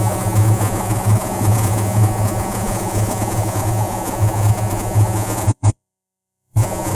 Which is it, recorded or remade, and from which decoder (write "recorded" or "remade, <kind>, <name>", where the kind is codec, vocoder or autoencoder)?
remade, vocoder, Vocos